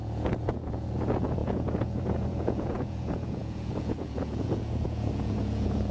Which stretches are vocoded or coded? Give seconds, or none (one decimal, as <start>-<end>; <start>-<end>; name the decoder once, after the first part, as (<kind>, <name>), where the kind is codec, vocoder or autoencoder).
0.0-5.9 (vocoder, Vocos)